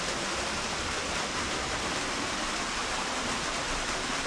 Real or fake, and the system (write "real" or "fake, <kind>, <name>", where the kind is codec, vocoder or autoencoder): fake, vocoder, BigVGAN v2